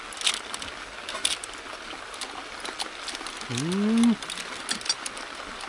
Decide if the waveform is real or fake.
real